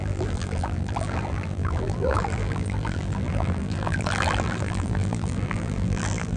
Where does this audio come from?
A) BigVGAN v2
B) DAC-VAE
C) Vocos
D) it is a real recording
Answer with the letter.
A